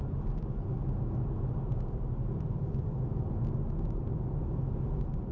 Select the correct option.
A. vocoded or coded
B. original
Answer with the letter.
B